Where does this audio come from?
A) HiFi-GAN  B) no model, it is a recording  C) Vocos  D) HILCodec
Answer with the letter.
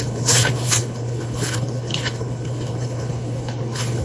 D